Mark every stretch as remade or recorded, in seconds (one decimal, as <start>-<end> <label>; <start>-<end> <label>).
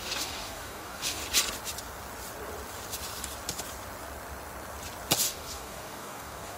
0.0-1.2 remade; 1.2-5.2 recorded; 5.2-6.6 remade